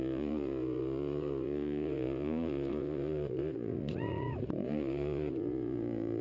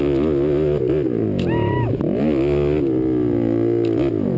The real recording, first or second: second